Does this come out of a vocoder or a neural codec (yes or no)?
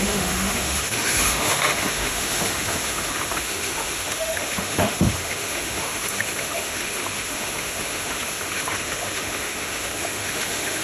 yes